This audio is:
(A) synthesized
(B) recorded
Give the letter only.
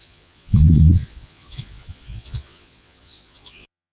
A